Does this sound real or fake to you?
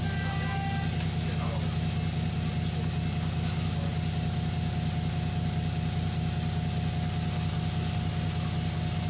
real